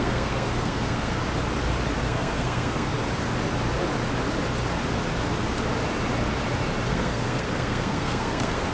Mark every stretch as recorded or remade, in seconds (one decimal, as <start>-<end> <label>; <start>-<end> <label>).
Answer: 0.0-1.2 remade; 1.2-2.0 recorded; 2.0-2.9 remade; 2.9-6.9 recorded; 6.9-8.7 remade

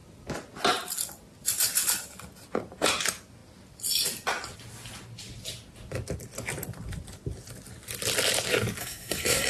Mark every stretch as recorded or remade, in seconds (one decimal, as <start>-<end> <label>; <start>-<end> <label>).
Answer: 0.0-8.8 recorded; 8.8-9.5 remade